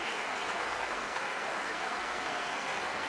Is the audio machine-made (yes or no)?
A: yes